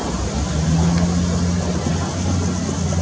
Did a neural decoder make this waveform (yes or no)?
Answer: no